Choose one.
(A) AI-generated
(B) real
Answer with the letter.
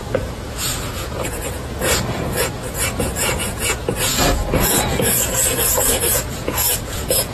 A